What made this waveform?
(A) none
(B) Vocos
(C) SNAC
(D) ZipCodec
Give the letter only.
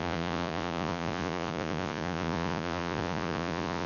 B